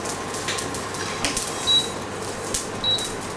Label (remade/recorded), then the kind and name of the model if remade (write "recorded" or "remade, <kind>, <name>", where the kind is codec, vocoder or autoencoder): recorded